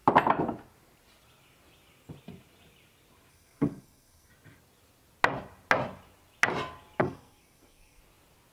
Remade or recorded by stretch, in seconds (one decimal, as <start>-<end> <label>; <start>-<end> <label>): 0.0-3.3 recorded; 3.3-4.3 remade; 4.3-7.0 recorded; 7.0-8.0 remade; 8.0-8.5 recorded